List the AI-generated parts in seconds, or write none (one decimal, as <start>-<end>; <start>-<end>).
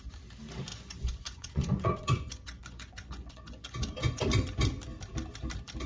0.7-4.2